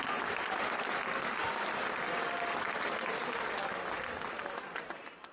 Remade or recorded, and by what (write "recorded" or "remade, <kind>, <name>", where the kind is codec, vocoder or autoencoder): recorded